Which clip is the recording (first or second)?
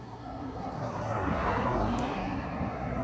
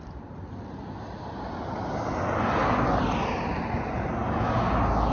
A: second